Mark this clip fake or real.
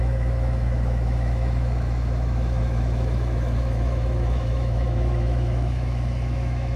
fake